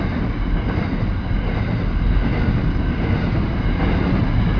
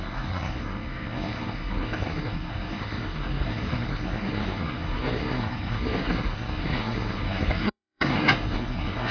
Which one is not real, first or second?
second